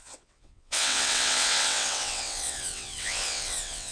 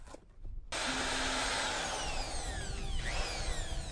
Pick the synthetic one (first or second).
first